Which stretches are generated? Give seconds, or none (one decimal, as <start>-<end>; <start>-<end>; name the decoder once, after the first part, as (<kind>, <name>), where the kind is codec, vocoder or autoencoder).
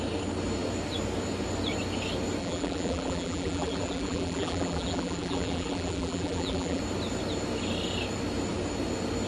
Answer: 2.4-6.8 (vocoder, BigVGAN v2)